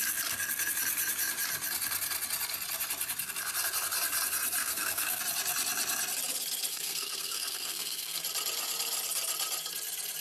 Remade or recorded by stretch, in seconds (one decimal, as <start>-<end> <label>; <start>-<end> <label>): 0.0-4.6 recorded; 4.6-5.2 remade; 5.2-6.7 recorded; 6.7-8.2 remade; 8.2-10.2 recorded